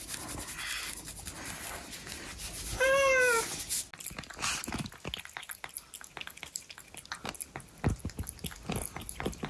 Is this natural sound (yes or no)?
yes